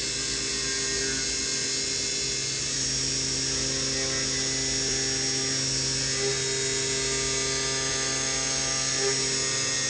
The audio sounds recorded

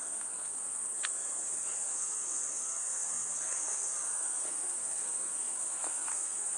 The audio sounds remade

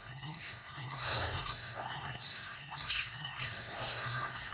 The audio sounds remade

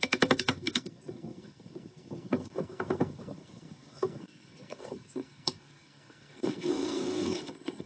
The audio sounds remade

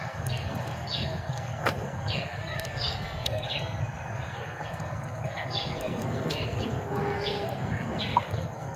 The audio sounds remade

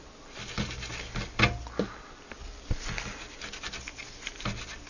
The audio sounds recorded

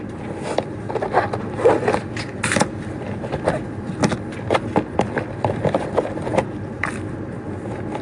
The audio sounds recorded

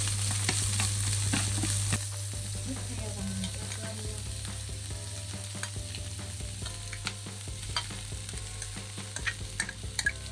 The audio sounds recorded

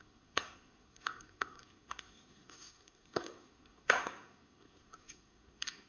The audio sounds remade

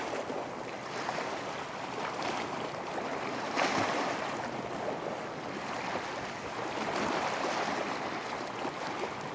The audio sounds recorded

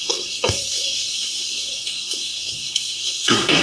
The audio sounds remade